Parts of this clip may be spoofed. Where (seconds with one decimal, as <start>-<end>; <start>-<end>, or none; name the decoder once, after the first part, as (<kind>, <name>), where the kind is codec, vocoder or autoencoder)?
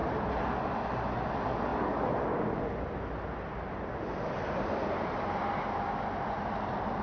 none